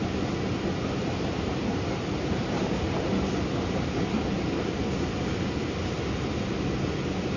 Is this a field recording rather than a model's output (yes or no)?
yes